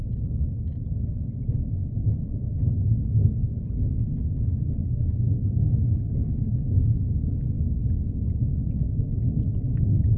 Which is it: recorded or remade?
recorded